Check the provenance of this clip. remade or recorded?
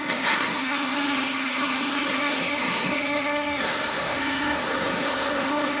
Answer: remade